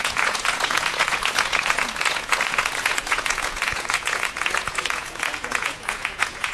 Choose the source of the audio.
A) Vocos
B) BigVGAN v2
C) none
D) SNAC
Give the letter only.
A